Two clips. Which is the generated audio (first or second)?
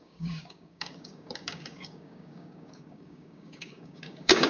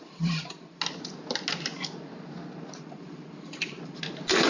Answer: first